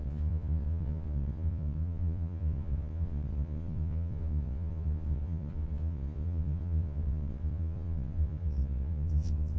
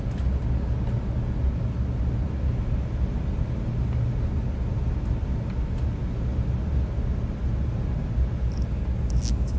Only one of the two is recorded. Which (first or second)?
second